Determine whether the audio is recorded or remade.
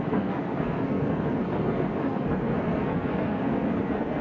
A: remade